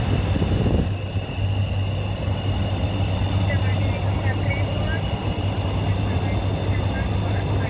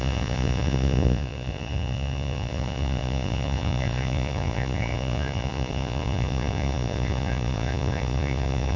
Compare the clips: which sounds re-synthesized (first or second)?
second